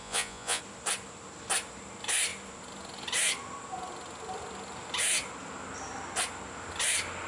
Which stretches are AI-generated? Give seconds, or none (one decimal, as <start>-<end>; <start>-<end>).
0.0-0.6

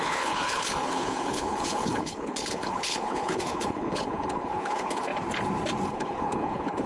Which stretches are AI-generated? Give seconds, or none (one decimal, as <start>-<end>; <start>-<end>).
0.0-5.1; 5.9-6.9

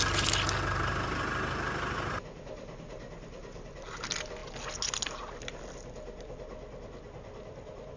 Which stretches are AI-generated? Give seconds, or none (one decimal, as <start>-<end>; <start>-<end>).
none